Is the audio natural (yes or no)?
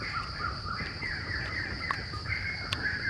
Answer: no